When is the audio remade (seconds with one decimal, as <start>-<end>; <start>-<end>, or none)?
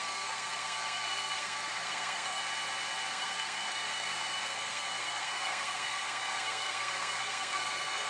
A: 0.0-2.4; 3.1-8.1